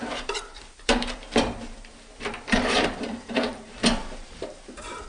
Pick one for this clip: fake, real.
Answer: fake